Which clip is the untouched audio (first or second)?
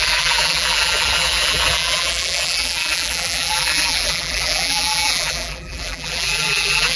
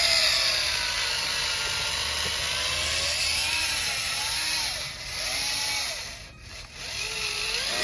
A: second